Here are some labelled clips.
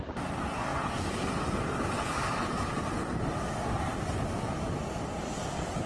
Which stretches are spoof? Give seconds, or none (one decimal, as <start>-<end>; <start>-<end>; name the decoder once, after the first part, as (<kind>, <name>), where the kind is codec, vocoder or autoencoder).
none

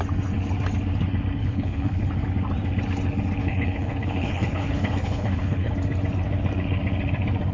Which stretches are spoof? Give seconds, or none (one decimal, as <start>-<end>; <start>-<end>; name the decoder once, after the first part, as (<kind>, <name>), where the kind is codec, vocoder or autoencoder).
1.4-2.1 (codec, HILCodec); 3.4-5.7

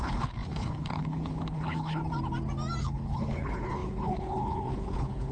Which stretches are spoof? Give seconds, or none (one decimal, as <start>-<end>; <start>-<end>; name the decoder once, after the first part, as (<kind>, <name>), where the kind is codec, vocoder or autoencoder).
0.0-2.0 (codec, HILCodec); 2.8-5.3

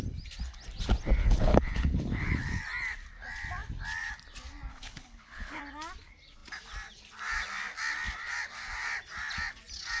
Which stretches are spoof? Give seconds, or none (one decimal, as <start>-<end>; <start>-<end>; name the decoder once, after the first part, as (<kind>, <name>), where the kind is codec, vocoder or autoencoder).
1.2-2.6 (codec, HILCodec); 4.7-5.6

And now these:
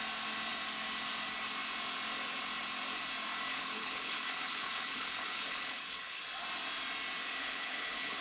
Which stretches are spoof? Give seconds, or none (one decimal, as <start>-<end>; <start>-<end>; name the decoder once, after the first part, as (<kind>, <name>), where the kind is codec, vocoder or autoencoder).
3.5-6.2 (codec, HILCodec); 7.4-8.2